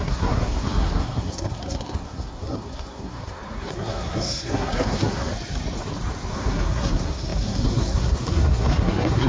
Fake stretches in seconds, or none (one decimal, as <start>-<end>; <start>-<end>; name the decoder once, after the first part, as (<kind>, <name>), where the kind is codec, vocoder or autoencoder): 0.0-5.3 (codec, SNAC); 6.3-9.3